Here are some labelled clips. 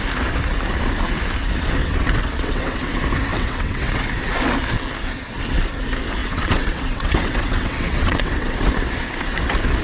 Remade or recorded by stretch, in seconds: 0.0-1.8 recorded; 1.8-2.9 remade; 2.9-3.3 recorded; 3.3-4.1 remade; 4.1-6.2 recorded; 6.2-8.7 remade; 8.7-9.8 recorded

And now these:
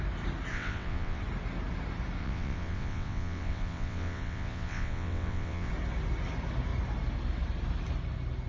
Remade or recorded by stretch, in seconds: 0.0-0.5 recorded; 0.5-1.2 remade; 1.2-2.2 recorded; 2.2-5.7 remade; 5.7-8.5 recorded

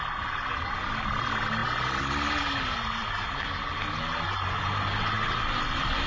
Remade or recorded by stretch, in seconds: 0.0-6.1 recorded

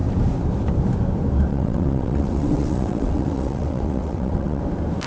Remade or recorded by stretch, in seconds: 0.0-1.5 recorded; 1.5-4.6 remade; 4.6-5.1 recorded